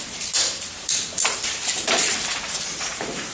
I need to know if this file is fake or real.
fake